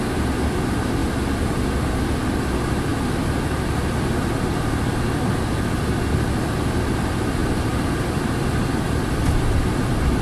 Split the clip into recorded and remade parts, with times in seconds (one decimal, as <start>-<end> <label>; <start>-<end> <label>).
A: 0.0-7.4 recorded; 7.4-9.4 remade; 9.4-10.2 recorded